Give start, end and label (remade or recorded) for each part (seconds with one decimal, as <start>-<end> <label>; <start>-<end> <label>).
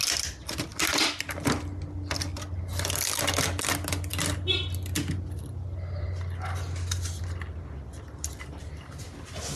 0.0-9.6 recorded